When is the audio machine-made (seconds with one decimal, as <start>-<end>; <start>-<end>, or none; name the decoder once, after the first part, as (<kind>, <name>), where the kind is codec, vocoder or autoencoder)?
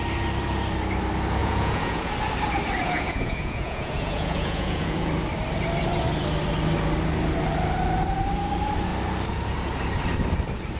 1.4-2.1 (vocoder, Vocos); 2.8-5.1